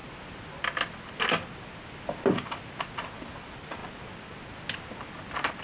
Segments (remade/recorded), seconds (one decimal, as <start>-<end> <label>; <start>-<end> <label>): 0.0-5.6 recorded